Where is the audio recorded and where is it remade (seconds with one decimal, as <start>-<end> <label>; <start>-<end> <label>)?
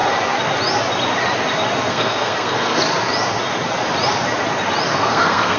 0.0-1.9 recorded; 1.9-2.8 remade; 2.8-4.9 recorded; 4.9-5.6 remade